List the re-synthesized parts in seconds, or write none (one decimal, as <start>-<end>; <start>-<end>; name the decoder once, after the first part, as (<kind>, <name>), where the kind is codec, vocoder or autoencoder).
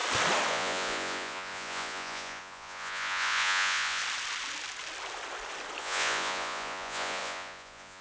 0.5-4.0 (vocoder, Vocos); 5.8-8.0